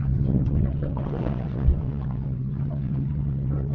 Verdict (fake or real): fake